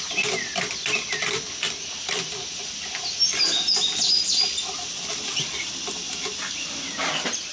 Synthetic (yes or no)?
no